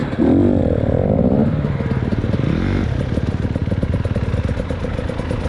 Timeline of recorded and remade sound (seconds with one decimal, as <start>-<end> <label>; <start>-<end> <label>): 0.0-5.5 recorded